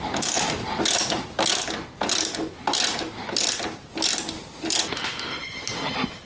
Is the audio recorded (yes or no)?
yes